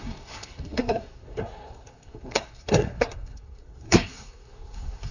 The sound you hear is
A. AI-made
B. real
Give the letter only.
A